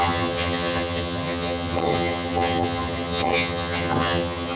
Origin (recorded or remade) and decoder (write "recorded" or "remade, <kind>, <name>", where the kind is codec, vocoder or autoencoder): remade, vocoder, HiFi-GAN